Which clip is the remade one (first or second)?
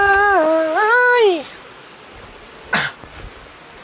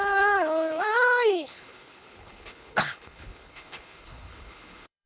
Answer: second